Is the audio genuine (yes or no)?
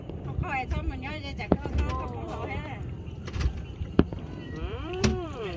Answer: no